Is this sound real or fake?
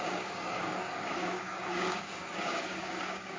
fake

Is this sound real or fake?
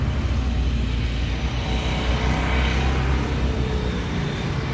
real